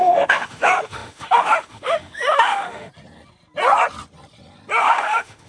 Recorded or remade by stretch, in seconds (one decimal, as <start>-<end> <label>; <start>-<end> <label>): 0.0-2.9 remade; 2.9-4.8 recorded; 4.8-5.5 remade